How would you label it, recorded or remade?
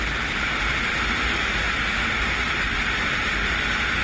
remade